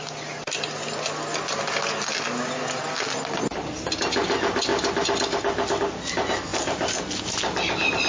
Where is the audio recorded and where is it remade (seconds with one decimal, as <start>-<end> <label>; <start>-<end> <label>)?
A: 0.0-8.1 recorded